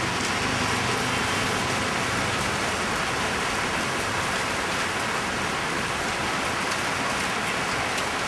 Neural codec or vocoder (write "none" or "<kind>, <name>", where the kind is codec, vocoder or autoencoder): none